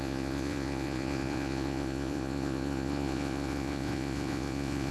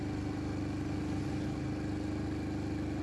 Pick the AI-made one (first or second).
first